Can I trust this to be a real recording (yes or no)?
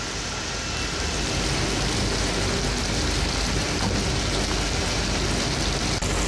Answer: yes